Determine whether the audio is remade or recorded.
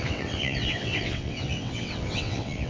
remade